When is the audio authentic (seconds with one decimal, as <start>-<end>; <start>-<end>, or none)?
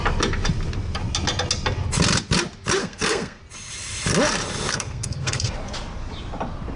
0.0-2.8; 3.4-4.7; 5.5-6.8